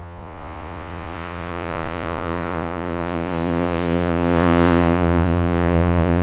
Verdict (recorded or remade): remade